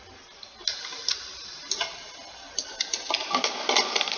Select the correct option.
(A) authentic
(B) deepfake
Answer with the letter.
A